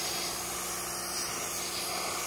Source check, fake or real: real